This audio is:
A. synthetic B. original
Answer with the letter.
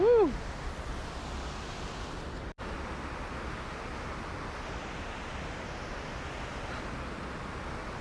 B